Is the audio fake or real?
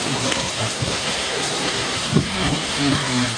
fake